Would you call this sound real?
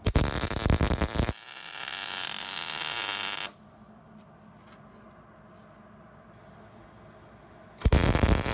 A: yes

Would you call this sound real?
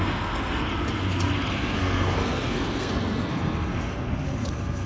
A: no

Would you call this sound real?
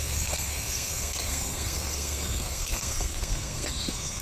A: no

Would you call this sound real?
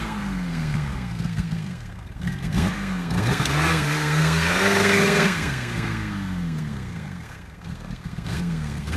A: no